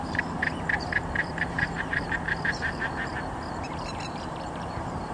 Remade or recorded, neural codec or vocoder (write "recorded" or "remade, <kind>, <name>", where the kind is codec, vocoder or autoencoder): remade, vocoder, BigVGAN v2